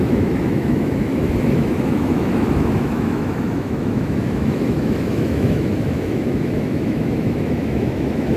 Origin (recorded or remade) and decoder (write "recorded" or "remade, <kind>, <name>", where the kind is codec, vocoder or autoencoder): remade, autoencoder, DAC-VAE